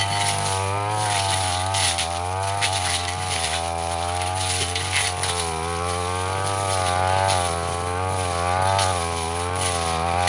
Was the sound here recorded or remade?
recorded